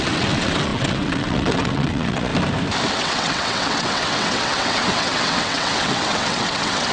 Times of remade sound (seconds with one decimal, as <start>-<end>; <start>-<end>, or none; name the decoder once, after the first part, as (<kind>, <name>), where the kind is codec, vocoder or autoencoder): 0.0-2.3 (vocoder, WaveNeXt); 2.9-6.9